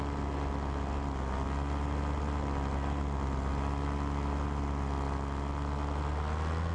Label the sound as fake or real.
real